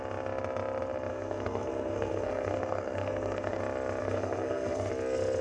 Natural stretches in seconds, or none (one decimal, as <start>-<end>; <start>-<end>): 0.0-1.1; 3.6-4.0; 4.9-5.4